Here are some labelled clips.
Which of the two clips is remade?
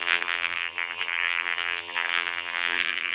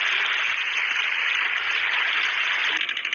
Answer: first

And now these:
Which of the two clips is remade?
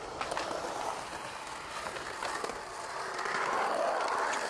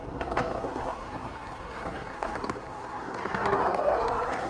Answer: second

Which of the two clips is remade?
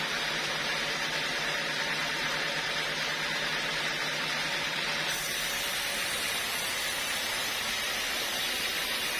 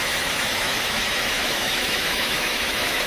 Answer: second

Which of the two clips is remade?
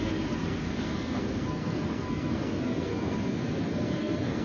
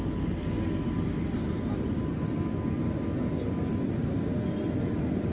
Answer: first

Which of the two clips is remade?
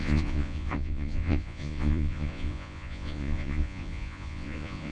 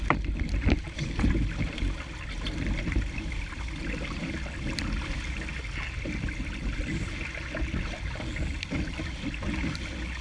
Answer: first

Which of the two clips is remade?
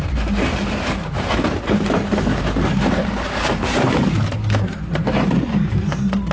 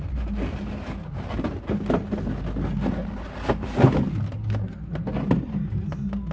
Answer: first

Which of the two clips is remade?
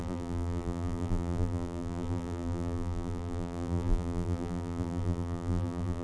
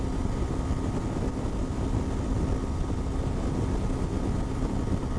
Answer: first